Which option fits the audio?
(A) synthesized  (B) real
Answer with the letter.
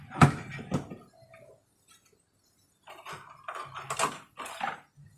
B